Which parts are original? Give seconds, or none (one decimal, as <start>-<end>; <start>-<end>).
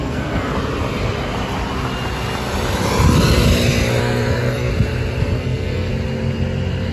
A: 0.5-4.0; 4.7-5.2; 5.9-6.9